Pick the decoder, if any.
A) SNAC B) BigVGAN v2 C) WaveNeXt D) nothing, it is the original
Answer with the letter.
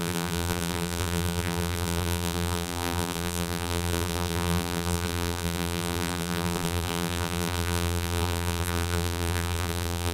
B